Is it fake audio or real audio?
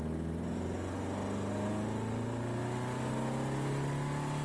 real